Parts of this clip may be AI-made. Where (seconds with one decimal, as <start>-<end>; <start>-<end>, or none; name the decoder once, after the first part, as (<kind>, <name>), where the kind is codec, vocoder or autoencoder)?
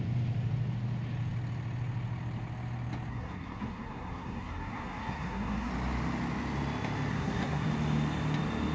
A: 3.1-5.7 (codec, SNAC); 7.1-7.7